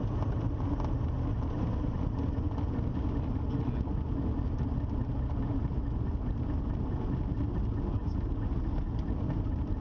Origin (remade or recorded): recorded